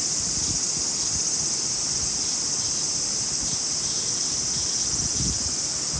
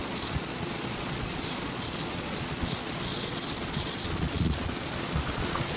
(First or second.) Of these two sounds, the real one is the first